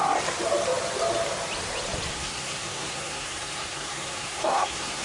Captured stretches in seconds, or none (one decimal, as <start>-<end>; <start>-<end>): 0.0-2.1

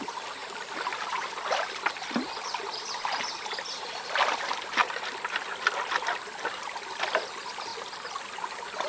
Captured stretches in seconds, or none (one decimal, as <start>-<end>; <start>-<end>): 0.0-8.9

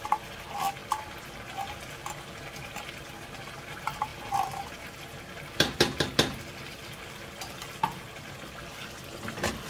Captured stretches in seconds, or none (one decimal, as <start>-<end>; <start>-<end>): 0.0-9.7

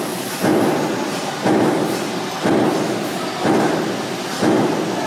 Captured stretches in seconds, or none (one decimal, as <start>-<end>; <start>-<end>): 0.0-5.1

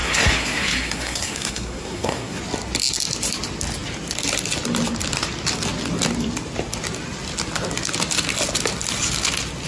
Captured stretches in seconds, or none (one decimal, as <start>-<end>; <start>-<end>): 2.4-9.7

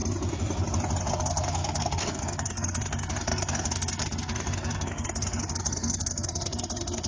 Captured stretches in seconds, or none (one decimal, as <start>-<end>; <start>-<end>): 0.0-1.1

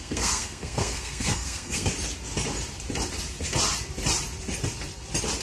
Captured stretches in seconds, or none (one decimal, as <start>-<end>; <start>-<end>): 1.9-5.4

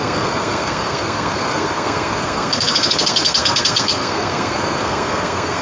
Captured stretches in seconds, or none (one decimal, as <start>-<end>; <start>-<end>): none